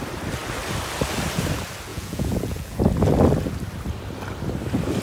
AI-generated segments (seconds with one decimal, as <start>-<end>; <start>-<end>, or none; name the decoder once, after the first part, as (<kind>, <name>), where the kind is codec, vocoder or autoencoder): 1.9-2.8 (vocoder, Vocos)